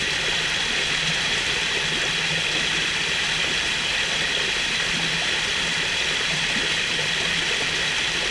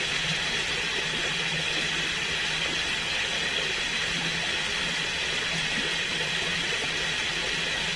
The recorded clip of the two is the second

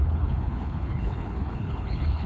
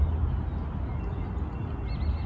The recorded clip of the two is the second